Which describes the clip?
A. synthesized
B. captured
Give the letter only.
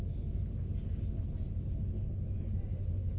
B